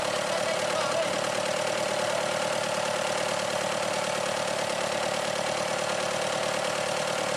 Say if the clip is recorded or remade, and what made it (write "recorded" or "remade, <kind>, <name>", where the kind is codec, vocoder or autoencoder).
recorded